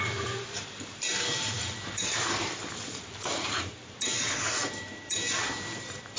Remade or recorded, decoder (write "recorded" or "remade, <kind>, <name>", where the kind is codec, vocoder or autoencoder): remade, vocoder, BigVGAN v2